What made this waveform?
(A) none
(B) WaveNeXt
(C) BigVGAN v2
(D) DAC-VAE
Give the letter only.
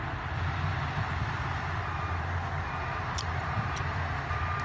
C